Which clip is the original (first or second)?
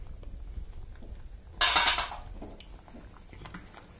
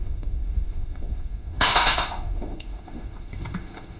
first